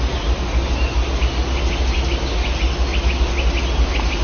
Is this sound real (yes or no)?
yes